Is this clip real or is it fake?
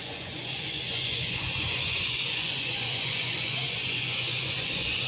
fake